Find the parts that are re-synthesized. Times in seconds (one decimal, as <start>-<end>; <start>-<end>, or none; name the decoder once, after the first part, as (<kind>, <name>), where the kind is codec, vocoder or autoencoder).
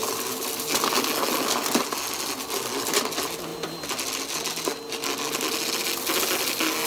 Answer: none